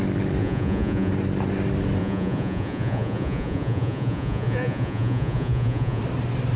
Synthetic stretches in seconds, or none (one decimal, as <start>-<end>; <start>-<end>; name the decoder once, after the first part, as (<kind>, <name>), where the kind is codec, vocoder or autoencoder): 0.4-1.1 (vocoder, Vocos); 2.0-6.0